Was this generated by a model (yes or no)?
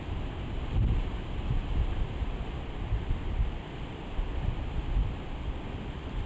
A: no